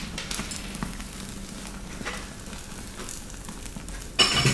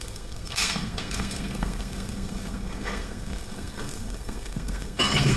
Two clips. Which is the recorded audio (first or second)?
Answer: first